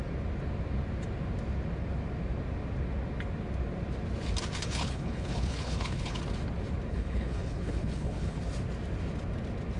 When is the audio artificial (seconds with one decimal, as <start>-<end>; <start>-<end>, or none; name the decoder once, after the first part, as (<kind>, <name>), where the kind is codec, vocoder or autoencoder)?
4.6-6.2 (codec, HILCodec); 6.9-8.4